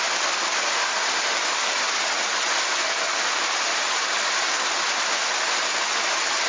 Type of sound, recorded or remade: recorded